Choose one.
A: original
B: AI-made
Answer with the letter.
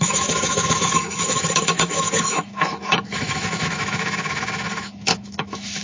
B